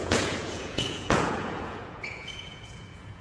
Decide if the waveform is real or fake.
fake